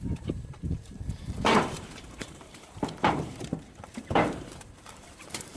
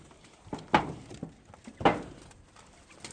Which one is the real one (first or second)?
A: second